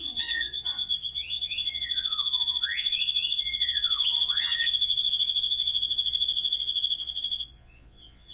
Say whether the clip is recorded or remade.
remade